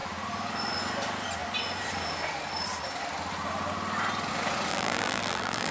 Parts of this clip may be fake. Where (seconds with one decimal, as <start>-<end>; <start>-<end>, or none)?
4.7-5.7

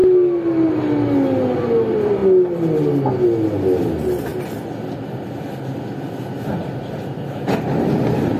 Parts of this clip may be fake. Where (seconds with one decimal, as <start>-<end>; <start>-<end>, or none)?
none

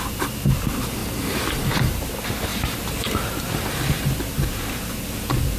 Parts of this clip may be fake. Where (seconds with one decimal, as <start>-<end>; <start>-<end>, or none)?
1.0-2.1; 2.5-3.7

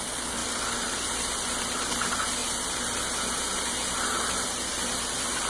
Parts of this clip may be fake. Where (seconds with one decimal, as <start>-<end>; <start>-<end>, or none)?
none

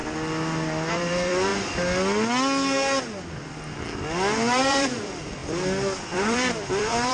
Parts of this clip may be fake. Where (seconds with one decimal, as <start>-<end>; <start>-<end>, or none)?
0.9-1.5; 4.7-5.4; 6.0-7.1

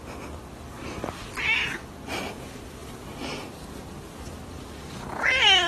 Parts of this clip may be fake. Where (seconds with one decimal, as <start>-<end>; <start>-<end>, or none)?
none